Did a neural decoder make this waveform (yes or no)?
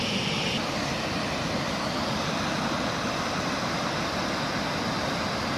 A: no